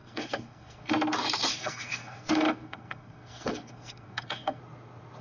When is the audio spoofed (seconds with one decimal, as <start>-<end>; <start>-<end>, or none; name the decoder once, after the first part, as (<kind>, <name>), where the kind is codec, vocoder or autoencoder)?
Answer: 0.0-0.9 (codec, SNAC); 1.5-4.6